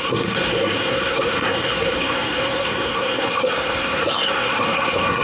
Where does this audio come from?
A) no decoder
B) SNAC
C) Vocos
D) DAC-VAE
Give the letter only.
B